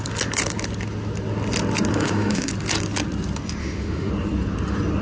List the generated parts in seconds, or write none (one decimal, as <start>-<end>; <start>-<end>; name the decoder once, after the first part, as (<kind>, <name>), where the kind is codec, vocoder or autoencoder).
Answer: 1.9-2.5 (autoencoder, DAC-VAE); 3.6-4.1

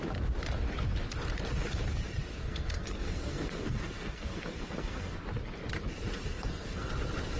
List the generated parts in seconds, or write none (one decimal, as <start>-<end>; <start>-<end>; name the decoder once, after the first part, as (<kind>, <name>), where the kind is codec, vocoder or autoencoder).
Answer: 2.4-5.2 (codec, SNAC); 6.3-6.9

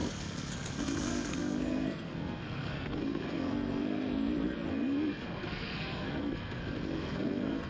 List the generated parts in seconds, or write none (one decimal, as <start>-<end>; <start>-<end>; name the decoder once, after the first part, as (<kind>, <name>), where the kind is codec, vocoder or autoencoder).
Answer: 0.0-7.7 (codec, SNAC)

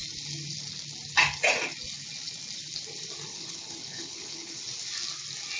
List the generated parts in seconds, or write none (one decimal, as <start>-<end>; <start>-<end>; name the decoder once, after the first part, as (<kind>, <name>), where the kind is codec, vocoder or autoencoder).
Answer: 3.3-4.6 (codec, HILCodec)

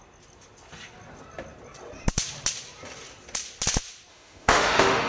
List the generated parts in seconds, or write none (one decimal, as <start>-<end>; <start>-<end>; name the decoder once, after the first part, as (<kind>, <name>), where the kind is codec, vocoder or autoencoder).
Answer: 4.1-5.1 (autoencoder, DAC-VAE)

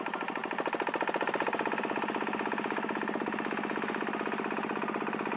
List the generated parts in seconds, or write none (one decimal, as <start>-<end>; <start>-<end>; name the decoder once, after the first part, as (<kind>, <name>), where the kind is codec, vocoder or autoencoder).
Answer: none